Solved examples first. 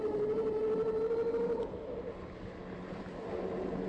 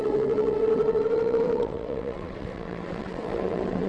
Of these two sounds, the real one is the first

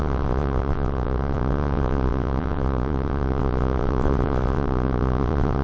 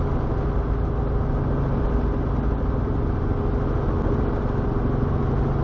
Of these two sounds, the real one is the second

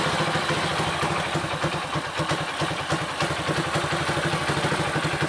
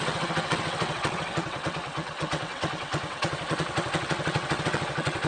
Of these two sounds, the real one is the first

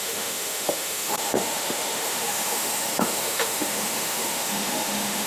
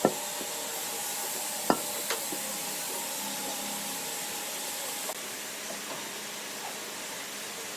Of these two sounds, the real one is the second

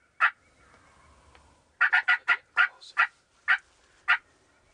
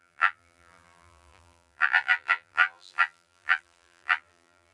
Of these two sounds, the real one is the first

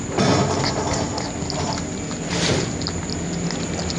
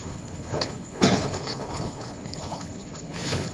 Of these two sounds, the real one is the first